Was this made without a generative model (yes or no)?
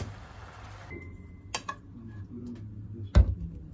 yes